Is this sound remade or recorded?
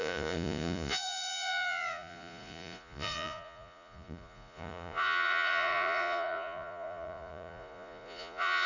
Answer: remade